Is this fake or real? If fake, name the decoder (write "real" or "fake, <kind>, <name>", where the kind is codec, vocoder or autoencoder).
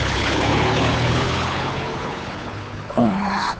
fake, codec, HILCodec